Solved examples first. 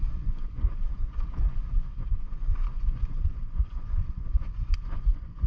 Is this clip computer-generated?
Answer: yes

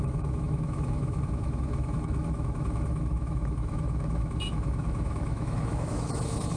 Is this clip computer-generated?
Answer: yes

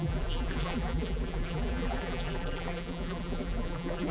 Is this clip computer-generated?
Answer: yes